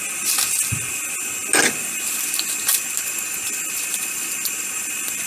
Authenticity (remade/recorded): recorded